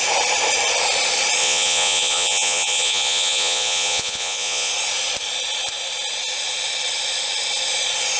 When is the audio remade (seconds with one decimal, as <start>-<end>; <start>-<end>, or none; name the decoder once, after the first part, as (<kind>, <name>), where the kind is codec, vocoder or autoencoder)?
1.4-4.7 (vocoder, Vocos)